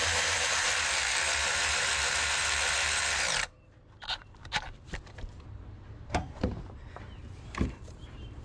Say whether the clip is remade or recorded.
remade